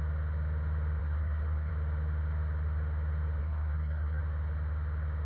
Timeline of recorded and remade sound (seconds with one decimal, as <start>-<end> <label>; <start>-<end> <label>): 0.0-1.0 recorded; 1.0-1.7 remade; 1.7-3.4 recorded; 3.4-4.2 remade; 4.2-5.2 recorded